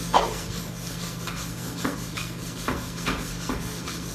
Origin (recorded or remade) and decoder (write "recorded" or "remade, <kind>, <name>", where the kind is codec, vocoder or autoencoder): remade, codec, SNAC